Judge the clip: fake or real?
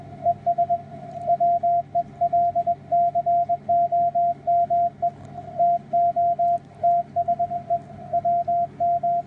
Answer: real